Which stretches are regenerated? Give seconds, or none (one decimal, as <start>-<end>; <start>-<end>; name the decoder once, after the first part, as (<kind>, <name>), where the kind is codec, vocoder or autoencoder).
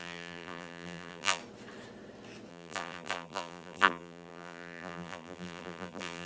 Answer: 0.0-1.4 (vocoder, BigVGAN v2); 2.5-6.3